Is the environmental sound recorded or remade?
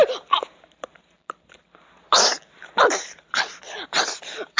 remade